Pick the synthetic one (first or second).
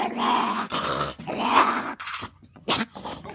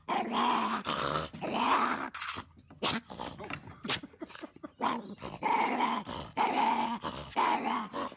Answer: first